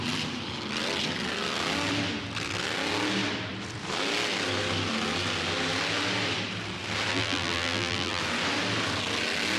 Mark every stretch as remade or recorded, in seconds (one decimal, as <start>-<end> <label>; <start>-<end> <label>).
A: 0.0-7.1 recorded; 7.1-8.2 remade; 8.2-9.6 recorded